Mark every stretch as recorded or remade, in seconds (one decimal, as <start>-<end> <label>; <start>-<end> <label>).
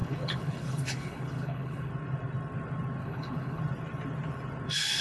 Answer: 0.0-1.9 remade; 1.9-3.0 recorded; 3.0-3.6 remade; 3.6-5.0 recorded